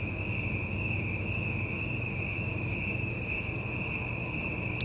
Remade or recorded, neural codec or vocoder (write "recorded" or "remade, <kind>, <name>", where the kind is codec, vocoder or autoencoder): recorded